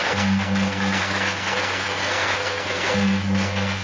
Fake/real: fake